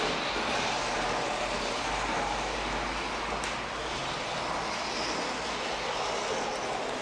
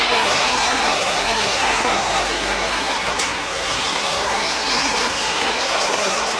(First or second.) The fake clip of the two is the second